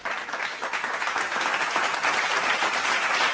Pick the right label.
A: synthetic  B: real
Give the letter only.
B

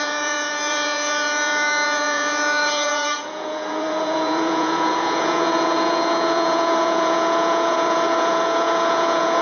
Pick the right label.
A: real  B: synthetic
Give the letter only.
B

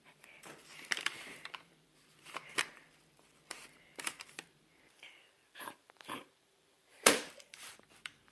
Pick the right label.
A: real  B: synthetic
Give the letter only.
B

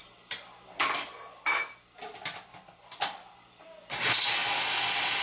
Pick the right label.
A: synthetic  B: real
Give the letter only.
B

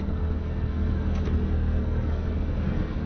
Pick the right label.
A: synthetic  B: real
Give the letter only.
A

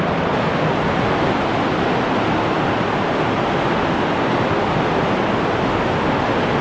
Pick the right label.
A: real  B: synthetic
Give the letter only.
A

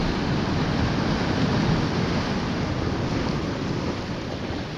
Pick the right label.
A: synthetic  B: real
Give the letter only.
B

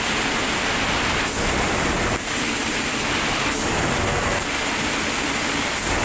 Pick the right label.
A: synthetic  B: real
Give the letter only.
B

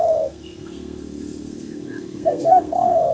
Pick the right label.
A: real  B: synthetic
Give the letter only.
B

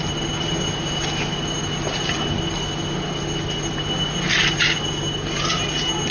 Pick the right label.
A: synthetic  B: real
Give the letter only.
B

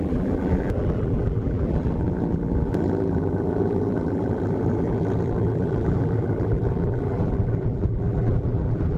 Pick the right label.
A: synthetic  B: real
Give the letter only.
A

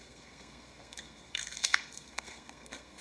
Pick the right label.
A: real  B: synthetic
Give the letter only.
B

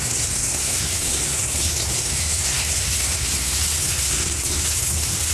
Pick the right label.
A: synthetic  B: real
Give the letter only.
A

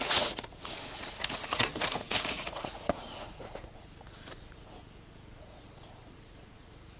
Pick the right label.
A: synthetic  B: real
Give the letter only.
A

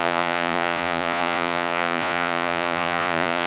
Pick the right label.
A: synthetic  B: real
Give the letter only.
A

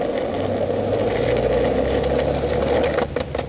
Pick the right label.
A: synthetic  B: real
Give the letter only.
B